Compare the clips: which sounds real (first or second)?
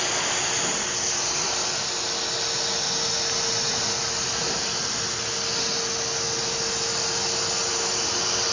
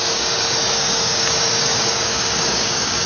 first